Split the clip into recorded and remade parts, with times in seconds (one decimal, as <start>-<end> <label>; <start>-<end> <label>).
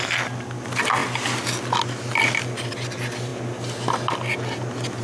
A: 0.0-5.0 recorded